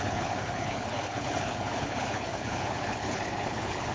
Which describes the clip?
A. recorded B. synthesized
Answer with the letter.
B